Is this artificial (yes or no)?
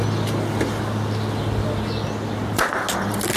no